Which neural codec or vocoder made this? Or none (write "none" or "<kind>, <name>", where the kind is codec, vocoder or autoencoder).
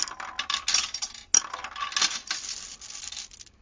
none